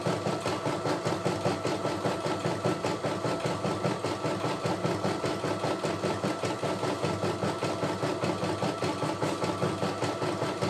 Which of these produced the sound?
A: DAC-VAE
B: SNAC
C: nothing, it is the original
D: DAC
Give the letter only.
C